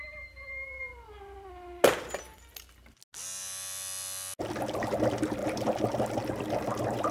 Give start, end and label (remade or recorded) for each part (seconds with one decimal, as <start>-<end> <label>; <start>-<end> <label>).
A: 0.0-7.1 recorded